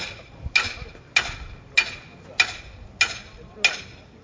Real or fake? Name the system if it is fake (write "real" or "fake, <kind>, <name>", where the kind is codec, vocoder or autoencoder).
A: real